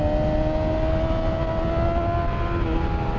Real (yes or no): yes